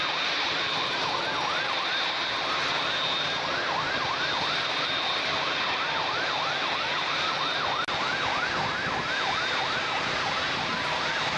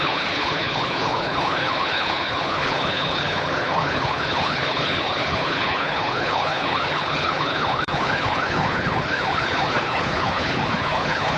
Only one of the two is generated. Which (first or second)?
second